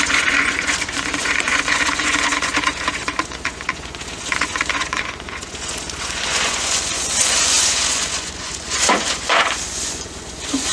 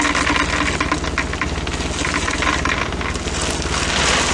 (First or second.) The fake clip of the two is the first